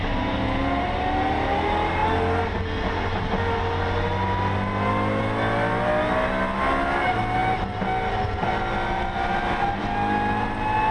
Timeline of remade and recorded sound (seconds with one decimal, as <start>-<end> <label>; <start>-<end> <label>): 0.0-10.9 recorded